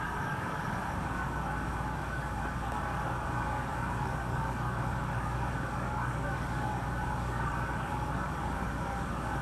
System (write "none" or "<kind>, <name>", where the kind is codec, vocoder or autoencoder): codec, DAC